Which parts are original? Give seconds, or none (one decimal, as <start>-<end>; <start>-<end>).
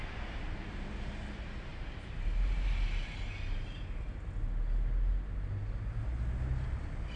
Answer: 0.0-7.2